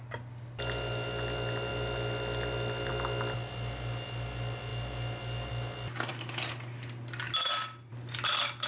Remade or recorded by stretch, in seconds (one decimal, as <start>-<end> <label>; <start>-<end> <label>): 0.0-8.7 recorded